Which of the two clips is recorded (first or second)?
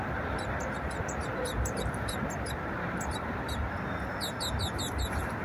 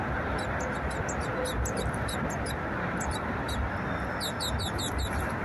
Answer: second